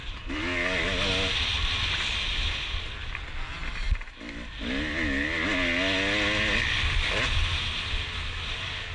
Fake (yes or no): no